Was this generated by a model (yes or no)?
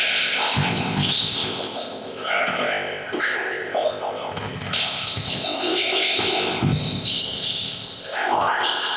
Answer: yes